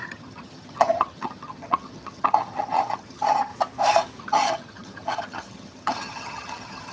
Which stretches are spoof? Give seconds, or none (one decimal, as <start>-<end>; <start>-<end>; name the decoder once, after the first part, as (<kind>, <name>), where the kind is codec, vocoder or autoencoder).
0.0-3.5 (vocoder, HiFi-GAN); 4.2-6.9